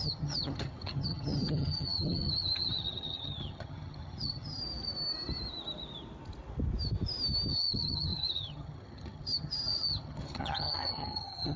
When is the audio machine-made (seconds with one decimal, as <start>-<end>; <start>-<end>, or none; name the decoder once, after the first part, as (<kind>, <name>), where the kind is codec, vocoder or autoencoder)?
0.0-4.6 (vocoder, HiFi-GAN); 7.5-11.6